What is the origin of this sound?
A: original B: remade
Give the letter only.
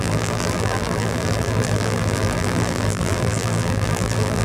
B